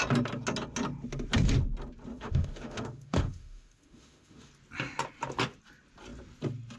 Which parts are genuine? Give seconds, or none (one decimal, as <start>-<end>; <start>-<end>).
0.0-2.1; 4.5-6.8